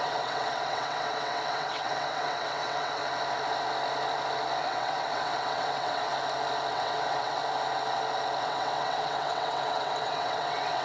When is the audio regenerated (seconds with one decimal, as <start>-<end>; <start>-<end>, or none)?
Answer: 0.0-3.0; 4.6-6.1; 6.7-7.4; 8.4-10.8